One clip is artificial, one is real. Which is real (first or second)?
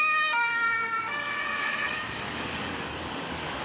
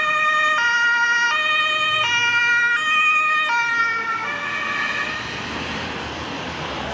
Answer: second